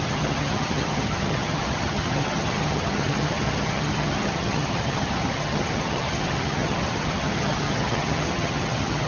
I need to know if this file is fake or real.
fake